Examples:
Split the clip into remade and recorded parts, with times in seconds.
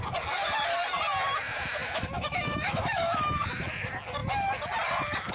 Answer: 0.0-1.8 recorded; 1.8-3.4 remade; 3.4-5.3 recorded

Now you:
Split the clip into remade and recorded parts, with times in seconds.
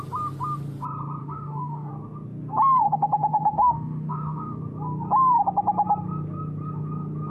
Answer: 0.0-1.2 recorded; 1.2-1.9 remade; 1.9-2.8 recorded; 2.8-4.6 remade; 4.6-7.3 recorded